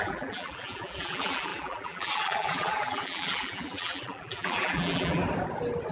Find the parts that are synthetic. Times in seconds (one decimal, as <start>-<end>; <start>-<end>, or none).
0.0-5.2